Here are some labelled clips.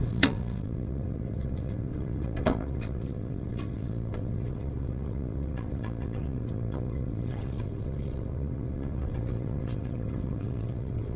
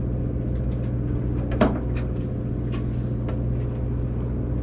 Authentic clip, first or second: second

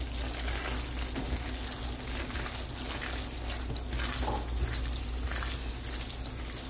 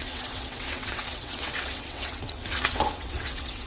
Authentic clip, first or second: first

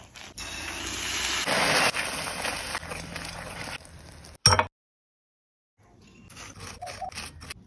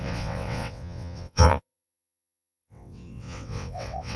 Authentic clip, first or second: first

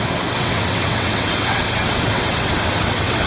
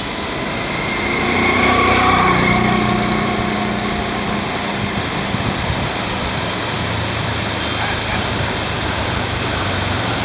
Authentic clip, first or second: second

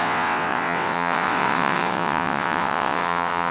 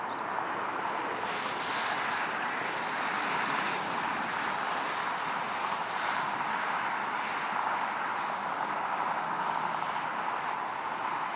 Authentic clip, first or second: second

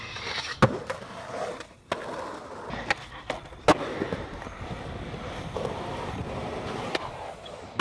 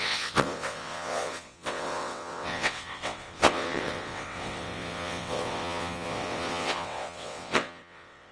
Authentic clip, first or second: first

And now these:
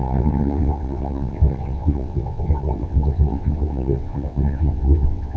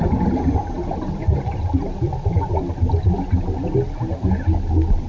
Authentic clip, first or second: second